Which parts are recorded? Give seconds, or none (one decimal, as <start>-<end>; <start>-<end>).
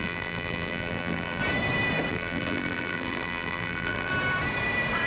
1.4-2.1; 4.1-5.1